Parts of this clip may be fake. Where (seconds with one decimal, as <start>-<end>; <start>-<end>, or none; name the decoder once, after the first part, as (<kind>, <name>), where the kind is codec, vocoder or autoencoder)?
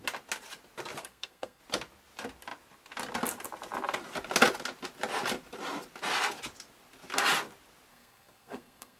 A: 1.0-1.6 (codec, SNAC); 7.9-9.0